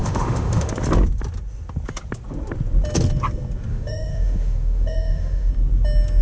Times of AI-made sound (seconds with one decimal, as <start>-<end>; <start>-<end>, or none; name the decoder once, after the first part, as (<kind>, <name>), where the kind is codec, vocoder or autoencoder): 0.0-0.7 (autoencoder, DAC-VAE); 3.7-5.5